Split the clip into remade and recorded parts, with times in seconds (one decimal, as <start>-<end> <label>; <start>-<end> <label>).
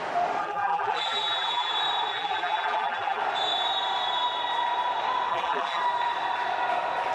0.0-0.4 recorded; 0.4-1.7 remade; 1.7-2.1 recorded; 2.1-3.2 remade; 3.2-5.3 recorded; 5.3-5.8 remade; 5.8-7.1 recorded